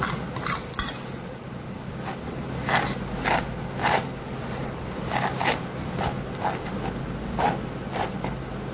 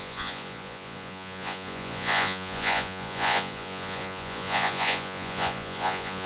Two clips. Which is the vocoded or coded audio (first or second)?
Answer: second